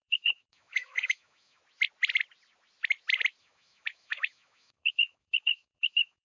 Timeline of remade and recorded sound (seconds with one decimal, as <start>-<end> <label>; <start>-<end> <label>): 0.0-1.6 remade; 1.6-3.4 recorded; 3.4-6.2 remade